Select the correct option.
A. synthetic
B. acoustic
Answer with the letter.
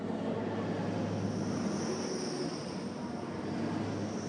B